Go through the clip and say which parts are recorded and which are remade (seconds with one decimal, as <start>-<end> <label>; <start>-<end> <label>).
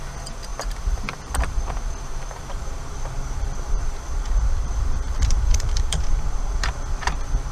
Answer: 0.0-2.5 recorded; 2.5-7.0 remade; 7.0-7.5 recorded